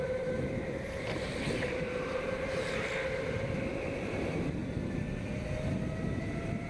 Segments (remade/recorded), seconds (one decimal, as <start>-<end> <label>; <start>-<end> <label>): 0.0-2.9 remade; 2.9-3.7 recorded; 3.7-4.6 remade; 4.6-6.2 recorded; 6.2-6.7 remade